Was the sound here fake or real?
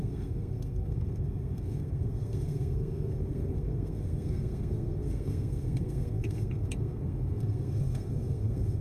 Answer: fake